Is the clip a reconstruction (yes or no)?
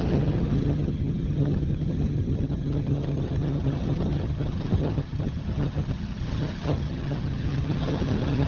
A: yes